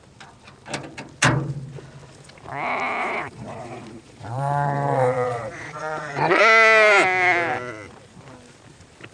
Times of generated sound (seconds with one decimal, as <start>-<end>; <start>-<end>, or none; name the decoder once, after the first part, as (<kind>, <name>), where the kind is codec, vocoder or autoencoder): 3.0-6.4 (vocoder, Vocos)